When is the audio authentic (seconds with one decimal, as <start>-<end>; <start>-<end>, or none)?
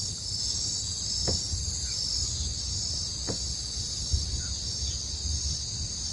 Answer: 0.0-6.1